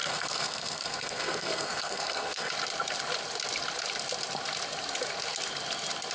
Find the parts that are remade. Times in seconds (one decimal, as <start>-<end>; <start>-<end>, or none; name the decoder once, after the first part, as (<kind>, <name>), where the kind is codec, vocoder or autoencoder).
0.0-2.5 (codec, SNAC)

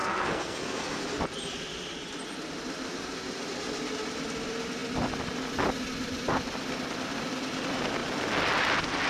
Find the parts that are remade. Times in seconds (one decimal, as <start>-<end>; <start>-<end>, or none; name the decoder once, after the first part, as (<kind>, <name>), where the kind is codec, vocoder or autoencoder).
0.0-1.0 (codec, SNAC)

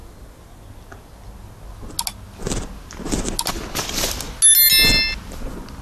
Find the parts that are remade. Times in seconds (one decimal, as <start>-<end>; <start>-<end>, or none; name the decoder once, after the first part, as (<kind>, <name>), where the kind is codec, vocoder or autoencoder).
none

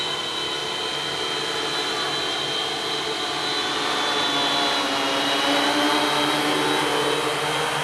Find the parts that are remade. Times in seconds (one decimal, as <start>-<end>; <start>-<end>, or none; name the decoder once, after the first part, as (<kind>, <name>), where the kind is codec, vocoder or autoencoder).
none

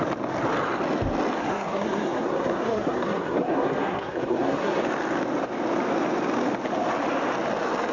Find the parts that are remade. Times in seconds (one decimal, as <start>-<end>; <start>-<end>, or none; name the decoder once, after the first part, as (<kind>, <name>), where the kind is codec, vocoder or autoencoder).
1.4-4.8 (codec, SNAC)

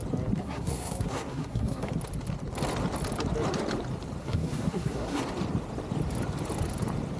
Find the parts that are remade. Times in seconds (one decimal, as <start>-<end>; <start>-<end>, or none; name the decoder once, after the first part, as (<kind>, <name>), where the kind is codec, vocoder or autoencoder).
0.4-1.9 (codec, SNAC); 4.2-5.2

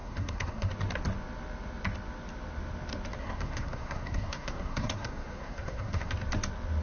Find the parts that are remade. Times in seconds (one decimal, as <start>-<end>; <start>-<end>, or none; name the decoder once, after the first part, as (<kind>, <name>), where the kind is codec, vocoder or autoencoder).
0.0-0.7 (codec, SNAC); 3.2-6.1

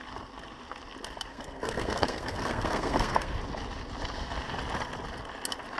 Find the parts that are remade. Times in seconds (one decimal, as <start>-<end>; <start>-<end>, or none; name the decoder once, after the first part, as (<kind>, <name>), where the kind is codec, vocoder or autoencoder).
1.3-3.4 (codec, SNAC)